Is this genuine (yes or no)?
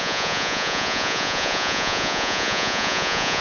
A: no